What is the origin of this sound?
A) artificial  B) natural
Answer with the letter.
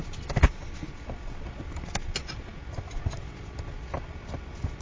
B